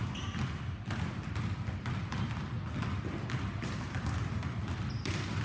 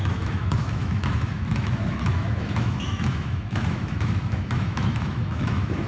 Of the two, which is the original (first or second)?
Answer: first